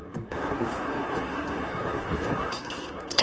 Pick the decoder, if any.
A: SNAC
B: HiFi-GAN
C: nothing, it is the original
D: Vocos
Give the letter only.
A